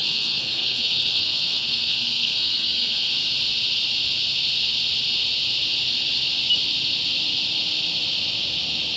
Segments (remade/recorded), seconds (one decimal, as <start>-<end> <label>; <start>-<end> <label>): 0.0-3.1 remade; 3.1-9.0 recorded